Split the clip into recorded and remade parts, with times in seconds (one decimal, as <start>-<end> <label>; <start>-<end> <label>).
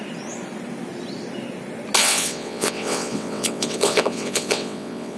0.0-2.0 recorded; 2.0-5.2 remade